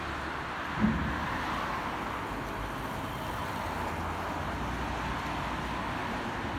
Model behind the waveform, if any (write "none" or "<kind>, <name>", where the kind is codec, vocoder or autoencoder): none